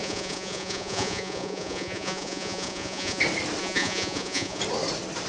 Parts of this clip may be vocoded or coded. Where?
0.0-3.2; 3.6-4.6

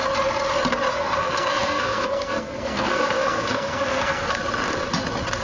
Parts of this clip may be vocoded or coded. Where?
0.9-4.4